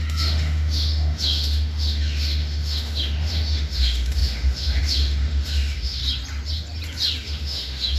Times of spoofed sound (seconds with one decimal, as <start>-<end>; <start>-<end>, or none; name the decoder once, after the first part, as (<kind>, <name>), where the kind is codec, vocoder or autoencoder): 0.0-6.0 (autoencoder, DAC-VAE); 7.2-8.0